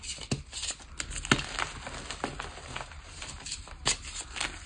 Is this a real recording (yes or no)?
yes